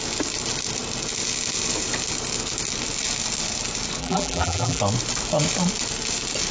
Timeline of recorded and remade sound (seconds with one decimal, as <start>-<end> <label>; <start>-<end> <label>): 0.0-4.0 recorded; 4.0-4.8 remade; 4.8-6.5 recorded